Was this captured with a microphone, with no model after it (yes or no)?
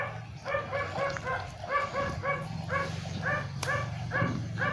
yes